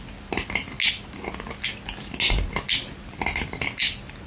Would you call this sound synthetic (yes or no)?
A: no